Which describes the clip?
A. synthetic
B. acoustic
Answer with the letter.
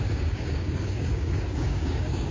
A